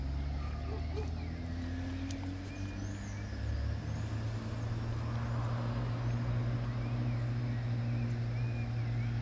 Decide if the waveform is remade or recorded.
recorded